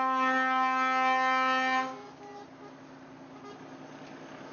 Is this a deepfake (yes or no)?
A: no